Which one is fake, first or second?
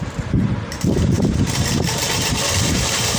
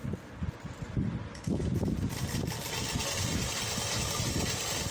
first